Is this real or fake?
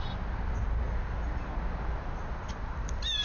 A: real